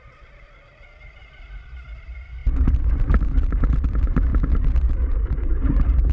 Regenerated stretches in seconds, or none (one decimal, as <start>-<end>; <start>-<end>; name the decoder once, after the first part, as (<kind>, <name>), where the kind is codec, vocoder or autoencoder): 0.0-6.1 (vocoder, BigVGAN v2)